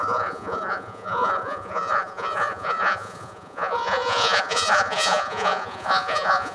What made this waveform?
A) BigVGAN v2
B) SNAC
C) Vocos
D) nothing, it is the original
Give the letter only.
C